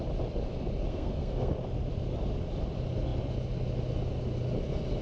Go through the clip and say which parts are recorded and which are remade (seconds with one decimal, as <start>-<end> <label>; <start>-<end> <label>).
0.0-0.9 recorded; 0.9-1.5 remade; 1.5-5.0 recorded